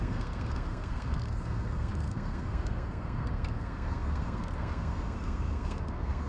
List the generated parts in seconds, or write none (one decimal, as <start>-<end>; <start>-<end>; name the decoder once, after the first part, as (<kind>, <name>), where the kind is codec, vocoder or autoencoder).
0.0-6.3 (codec, SNAC)